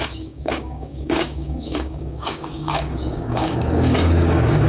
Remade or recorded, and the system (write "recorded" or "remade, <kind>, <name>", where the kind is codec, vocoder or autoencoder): remade, codec, DAC